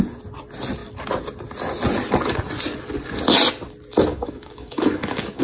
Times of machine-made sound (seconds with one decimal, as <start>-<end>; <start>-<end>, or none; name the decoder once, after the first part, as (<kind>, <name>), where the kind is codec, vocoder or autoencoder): 4.1-5.4 (codec, DAC)